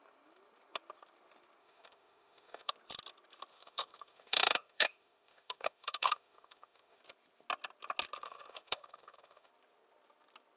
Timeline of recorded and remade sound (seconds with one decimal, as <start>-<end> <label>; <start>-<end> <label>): 0.0-1.6 recorded; 1.6-2.7 remade; 2.7-3.5 recorded; 3.5-7.0 remade; 7.0-8.2 recorded; 8.2-9.5 remade; 9.5-10.6 recorded

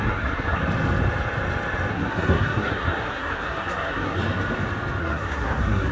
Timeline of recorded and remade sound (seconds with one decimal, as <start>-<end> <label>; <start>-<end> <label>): 0.0-0.6 remade; 0.6-1.9 recorded; 1.9-4.2 remade; 4.2-5.0 recorded; 5.0-5.9 remade

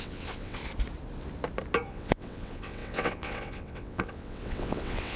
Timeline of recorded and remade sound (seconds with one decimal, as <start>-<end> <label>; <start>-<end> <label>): 0.0-0.6 remade; 0.6-1.9 recorded; 1.9-5.2 remade

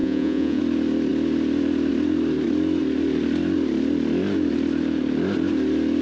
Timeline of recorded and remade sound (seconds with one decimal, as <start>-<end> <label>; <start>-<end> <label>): 0.0-0.6 remade; 0.6-6.0 recorded

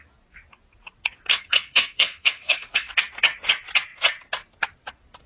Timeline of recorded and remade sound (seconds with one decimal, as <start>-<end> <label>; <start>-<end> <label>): 0.0-1.3 recorded; 1.3-2.9 remade; 2.9-5.3 recorded

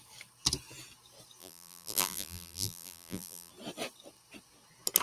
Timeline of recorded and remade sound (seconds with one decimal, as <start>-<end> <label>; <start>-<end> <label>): 0.0-1.4 recorded; 1.4-3.5 remade; 3.5-5.0 recorded

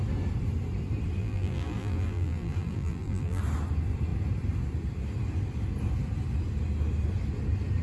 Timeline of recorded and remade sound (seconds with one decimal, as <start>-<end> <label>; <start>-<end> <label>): 0.0-1.2 recorded; 1.2-3.4 remade; 3.4-7.8 recorded